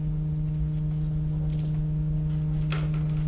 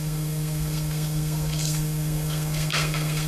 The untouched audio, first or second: first